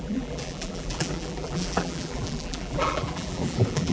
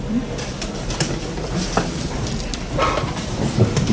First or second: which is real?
second